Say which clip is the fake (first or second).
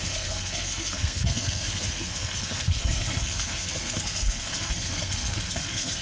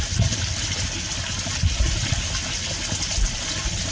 first